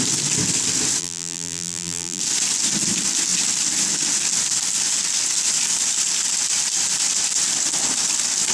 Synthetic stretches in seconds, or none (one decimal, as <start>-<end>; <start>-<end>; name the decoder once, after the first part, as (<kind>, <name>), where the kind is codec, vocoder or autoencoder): 1.0-2.2 (vocoder, BigVGAN v2)